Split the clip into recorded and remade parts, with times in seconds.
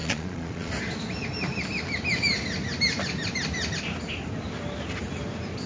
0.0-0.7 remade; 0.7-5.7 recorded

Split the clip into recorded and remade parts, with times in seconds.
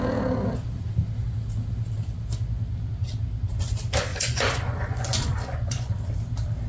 0.0-4.1 recorded; 4.1-5.9 remade; 5.9-6.7 recorded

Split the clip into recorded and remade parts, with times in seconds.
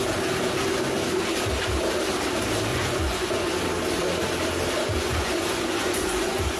0.0-2.7 recorded; 2.7-3.5 remade; 3.5-4.9 recorded; 4.9-6.6 remade